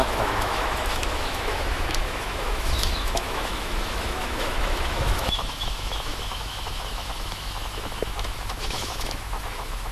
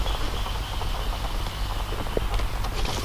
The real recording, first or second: second